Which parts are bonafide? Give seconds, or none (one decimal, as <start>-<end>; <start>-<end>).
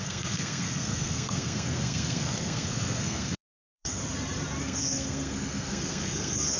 4.0-4.6